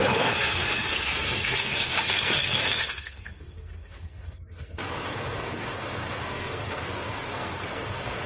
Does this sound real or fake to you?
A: fake